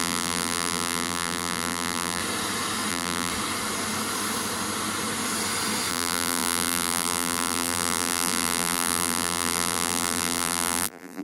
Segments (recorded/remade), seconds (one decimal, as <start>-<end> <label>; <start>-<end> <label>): 0.0-2.2 remade; 2.2-2.9 recorded; 2.9-3.3 remade; 3.3-5.9 recorded; 5.9-11.2 remade